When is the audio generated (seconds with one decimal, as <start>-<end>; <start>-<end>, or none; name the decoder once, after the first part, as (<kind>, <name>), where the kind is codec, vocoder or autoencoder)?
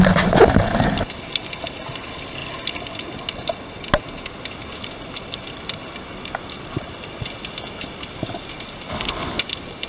8.9-9.4 (codec, HILCodec)